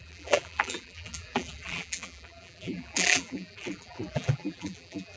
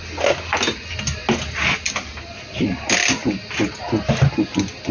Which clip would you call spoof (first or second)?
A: first